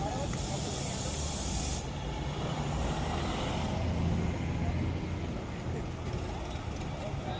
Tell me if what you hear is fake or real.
real